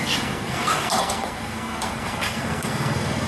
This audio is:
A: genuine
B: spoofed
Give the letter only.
B